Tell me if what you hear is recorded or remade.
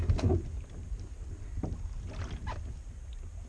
recorded